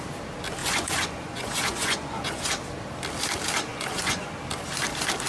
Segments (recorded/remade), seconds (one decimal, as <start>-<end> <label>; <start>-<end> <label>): 0.0-0.6 recorded; 0.6-2.5 remade; 2.5-3.7 recorded; 3.7-4.3 remade; 4.3-5.3 recorded